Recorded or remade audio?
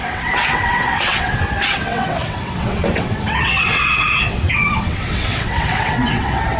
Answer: remade